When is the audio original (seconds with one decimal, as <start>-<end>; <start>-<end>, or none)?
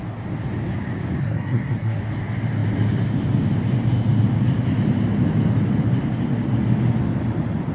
0.0-1.2; 2.0-7.7